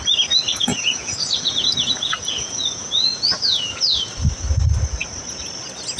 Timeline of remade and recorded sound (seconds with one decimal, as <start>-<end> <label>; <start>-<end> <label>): 0.0-0.5 recorded; 0.5-4.1 remade; 4.1-6.0 recorded